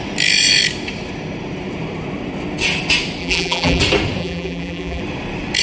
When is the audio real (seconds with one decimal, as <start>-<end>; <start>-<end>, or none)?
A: 0.0-3.2; 3.8-4.2; 5.0-5.6